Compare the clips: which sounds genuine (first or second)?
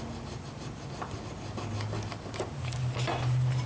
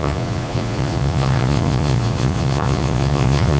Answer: first